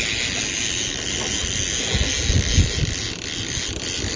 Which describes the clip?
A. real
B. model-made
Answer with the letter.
A